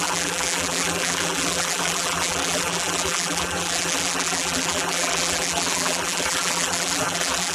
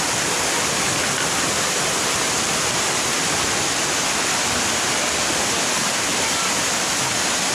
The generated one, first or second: first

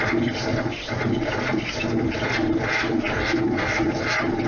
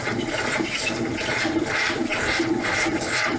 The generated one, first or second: second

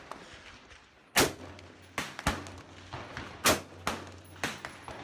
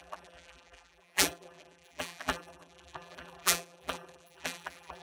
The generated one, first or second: second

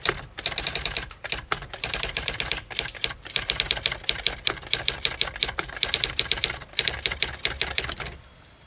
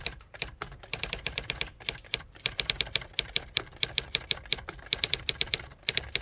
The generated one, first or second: second